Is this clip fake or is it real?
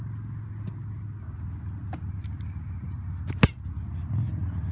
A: real